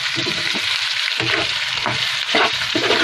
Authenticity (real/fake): fake